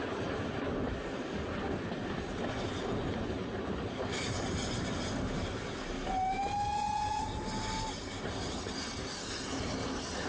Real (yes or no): yes